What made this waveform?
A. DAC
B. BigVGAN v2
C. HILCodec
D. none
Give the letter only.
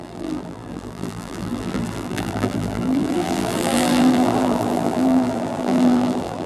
B